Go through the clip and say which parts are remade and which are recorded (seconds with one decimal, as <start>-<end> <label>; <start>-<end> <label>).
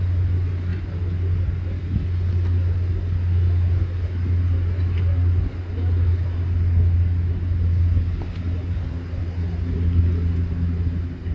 0.0-11.3 recorded